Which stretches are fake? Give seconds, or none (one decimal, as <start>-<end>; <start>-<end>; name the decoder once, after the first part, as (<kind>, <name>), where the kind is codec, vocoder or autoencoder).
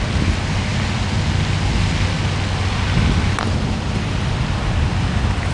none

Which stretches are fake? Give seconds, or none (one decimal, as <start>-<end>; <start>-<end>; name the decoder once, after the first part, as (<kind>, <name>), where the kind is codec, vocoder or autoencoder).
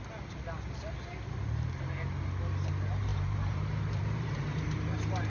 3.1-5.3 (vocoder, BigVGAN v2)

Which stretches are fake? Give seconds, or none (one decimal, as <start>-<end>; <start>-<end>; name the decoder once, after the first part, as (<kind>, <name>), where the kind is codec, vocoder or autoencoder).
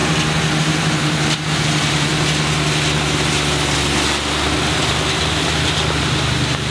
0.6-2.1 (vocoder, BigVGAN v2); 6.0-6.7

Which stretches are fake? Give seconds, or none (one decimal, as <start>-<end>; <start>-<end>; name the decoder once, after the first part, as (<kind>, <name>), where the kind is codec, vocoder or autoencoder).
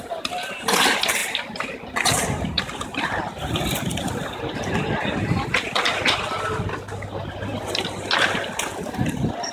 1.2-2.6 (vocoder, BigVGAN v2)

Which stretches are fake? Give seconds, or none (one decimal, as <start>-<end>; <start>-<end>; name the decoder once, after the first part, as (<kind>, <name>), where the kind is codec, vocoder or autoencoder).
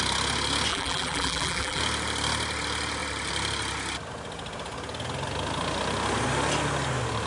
0.7-1.8 (vocoder, BigVGAN v2)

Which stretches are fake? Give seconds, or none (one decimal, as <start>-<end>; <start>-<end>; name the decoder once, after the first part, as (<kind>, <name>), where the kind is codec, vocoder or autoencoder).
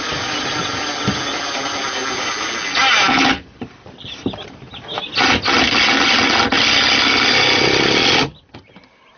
none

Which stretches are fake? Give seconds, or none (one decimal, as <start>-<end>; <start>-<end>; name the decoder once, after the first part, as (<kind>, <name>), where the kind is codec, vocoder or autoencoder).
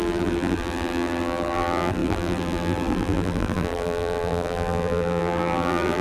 0.0-6.0 (vocoder, BigVGAN v2)